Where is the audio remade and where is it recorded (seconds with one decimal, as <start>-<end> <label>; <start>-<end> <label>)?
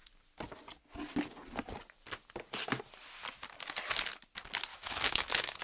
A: 0.0-4.7 recorded; 4.7-5.6 remade